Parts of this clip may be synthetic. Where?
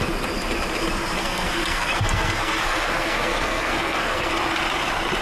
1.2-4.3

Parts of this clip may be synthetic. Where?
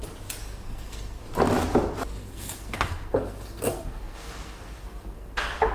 0.4-1.2; 2.2-5.7